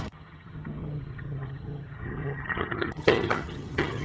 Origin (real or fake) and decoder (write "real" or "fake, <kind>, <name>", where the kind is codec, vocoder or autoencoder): fake, vocoder, HiFi-GAN